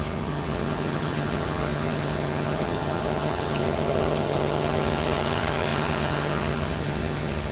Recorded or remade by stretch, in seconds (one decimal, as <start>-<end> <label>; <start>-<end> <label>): 0.0-7.5 remade